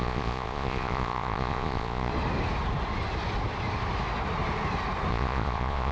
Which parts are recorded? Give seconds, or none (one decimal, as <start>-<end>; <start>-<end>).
2.1-5.1